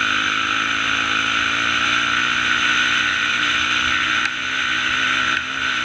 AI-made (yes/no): no